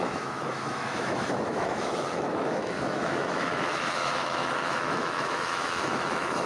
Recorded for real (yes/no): no